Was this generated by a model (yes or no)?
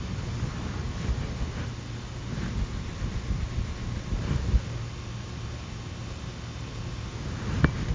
no